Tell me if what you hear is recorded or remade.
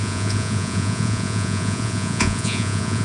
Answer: remade